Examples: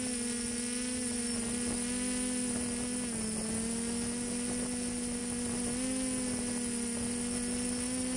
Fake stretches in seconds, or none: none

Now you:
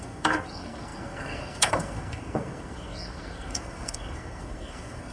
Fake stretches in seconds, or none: 0.0-5.1 (codec, SNAC)

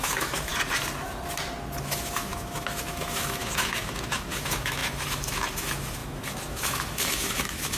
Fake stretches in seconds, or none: 0.0-0.5 (autoencoder, DAC-VAE); 1.8-7.8